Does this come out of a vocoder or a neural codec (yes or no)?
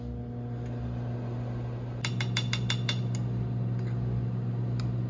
no